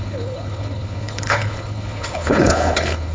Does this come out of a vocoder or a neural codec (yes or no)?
yes